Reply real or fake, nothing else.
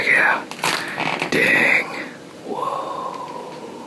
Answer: real